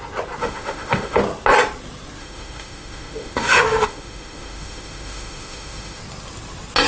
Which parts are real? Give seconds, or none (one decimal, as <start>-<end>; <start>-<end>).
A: 0.0-0.4; 1.2-2.2; 6.0-6.9